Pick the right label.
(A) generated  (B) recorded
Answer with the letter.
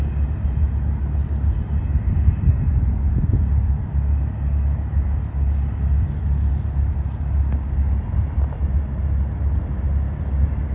B